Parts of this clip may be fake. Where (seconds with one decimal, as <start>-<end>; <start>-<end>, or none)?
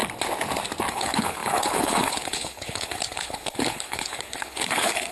0.9-5.1